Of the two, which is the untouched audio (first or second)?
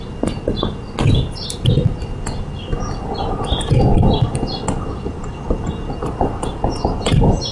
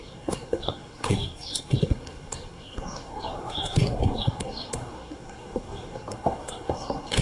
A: first